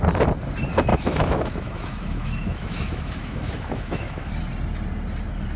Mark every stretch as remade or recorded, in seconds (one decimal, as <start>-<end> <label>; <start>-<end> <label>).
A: 0.0-0.9 recorded; 0.9-4.3 remade; 4.3-5.6 recorded